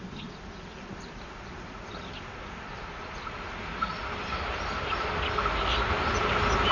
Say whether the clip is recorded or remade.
recorded